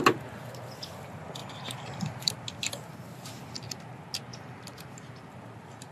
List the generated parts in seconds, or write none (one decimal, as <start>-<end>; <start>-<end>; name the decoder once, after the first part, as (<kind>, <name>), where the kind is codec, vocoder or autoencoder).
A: 1.4-2.3 (vocoder, BigVGAN v2); 4.3-5.2